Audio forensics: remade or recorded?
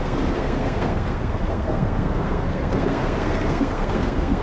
remade